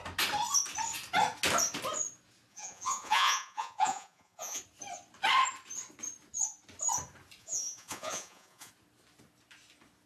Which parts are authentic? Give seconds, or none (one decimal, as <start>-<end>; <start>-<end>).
0.0-2.5; 4.6-7.4; 8.7-10.1